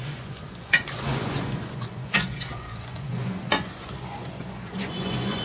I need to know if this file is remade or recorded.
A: remade